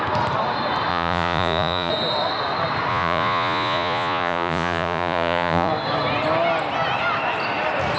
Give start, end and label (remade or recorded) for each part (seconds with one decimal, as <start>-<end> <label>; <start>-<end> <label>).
0.0-0.9 recorded; 0.9-1.9 remade; 1.9-2.9 recorded; 2.9-5.7 remade; 5.7-8.0 recorded